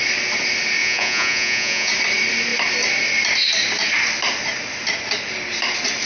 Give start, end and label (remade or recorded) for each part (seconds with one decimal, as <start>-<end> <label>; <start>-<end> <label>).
0.0-0.8 recorded; 0.8-1.9 remade; 1.9-6.1 recorded